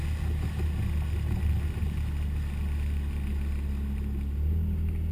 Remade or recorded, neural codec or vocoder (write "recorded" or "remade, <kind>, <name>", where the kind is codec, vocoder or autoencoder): recorded